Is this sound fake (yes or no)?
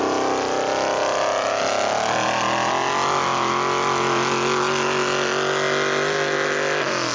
no